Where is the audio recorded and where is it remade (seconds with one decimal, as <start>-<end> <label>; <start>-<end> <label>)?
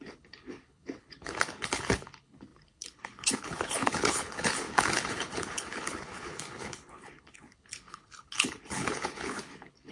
0.0-9.9 remade